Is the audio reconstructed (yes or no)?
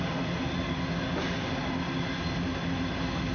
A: no